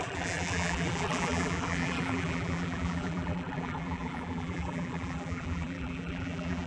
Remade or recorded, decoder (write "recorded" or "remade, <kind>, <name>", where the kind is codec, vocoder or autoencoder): remade, vocoder, BigVGAN v2